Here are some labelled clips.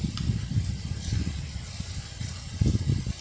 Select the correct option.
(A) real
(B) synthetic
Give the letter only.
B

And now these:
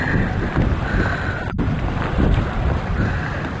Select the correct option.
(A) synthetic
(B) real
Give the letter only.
A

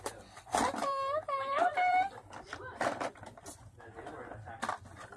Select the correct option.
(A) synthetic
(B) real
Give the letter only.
A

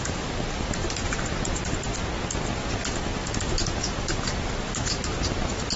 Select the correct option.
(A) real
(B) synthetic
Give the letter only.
A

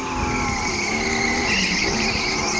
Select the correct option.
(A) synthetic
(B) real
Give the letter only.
B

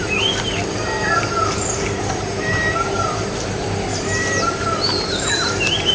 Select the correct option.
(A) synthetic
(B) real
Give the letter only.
A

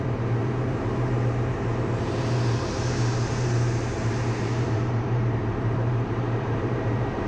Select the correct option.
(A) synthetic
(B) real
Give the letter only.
A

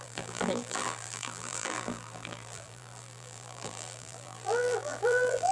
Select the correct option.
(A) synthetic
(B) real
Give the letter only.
A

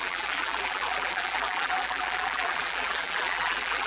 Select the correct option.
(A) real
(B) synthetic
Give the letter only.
B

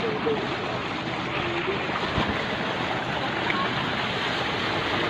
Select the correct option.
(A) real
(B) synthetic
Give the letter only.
A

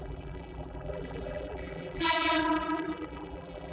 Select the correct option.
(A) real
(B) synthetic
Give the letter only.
B